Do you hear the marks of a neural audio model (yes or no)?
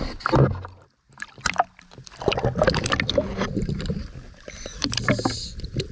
no